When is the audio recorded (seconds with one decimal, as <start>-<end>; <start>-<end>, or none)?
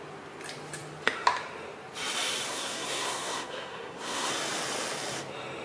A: 0.0-2.5; 4.3-5.6